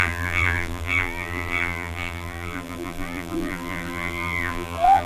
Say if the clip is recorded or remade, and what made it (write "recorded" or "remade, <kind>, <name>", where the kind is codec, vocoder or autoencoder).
remade, vocoder, BigVGAN v2